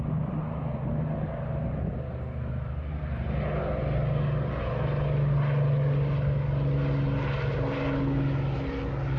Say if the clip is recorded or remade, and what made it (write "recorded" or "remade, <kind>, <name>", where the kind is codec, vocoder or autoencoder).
recorded